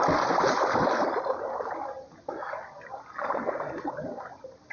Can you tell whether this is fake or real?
real